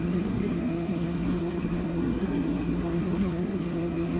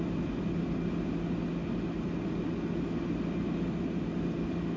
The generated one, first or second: first